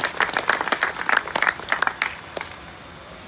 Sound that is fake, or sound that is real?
real